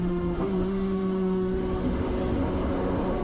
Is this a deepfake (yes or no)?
yes